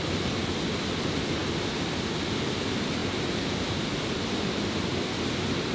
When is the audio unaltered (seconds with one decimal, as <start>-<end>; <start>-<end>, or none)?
0.0-5.7